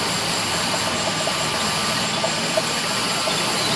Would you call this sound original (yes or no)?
yes